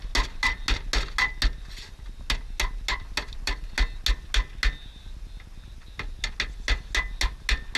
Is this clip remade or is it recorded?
recorded